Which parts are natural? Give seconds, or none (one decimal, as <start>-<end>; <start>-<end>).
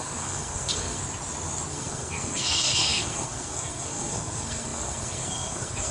1.0-1.7